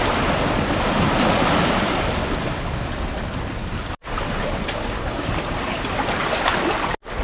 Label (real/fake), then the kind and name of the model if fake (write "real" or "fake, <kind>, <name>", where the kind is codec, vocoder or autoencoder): real